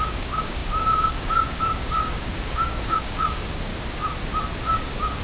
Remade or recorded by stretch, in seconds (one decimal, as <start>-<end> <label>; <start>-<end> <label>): 0.0-3.7 remade; 3.7-4.6 recorded; 4.6-5.2 remade